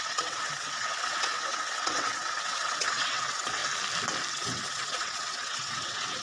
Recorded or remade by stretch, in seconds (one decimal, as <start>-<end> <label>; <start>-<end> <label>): 0.0-3.6 remade; 3.6-4.3 recorded; 4.3-6.2 remade